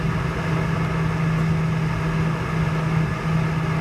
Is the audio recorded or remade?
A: recorded